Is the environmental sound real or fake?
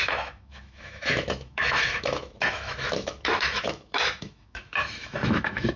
fake